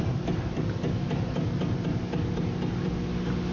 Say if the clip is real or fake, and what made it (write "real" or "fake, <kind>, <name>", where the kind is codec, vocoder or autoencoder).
real